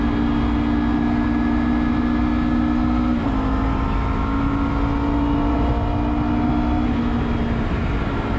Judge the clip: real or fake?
real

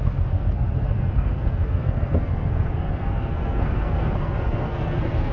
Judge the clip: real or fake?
fake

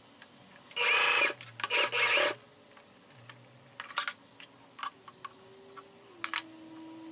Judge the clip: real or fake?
real